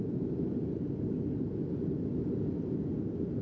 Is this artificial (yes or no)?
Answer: no